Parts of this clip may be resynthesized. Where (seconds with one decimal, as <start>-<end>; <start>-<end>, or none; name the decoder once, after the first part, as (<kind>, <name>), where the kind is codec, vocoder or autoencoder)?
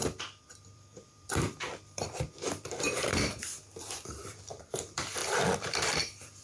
0.6-3.1 (vocoder, BigVGAN v2); 3.8-6.4